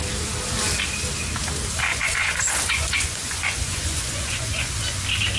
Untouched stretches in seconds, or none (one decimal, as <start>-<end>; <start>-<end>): 0.0-1.9; 5.0-5.4

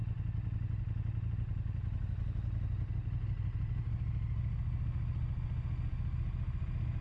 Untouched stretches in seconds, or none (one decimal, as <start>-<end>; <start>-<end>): 0.0-7.0

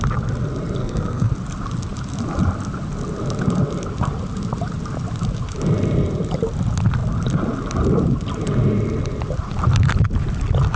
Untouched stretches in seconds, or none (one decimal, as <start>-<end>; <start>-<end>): 0.0-0.8; 1.3-10.8

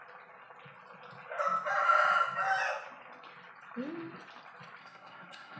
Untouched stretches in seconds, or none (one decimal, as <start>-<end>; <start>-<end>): 0.0-4.8